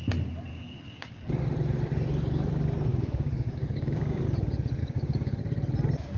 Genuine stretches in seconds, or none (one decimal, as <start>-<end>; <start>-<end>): 0.0-0.5; 1.2-2.9; 4.2-4.8; 5.4-6.2